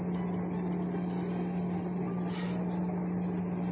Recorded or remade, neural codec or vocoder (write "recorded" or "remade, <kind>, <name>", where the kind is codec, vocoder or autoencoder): recorded